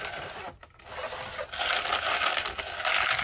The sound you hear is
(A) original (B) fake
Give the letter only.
A